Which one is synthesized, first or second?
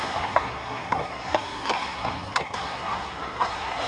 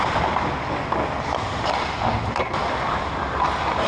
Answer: first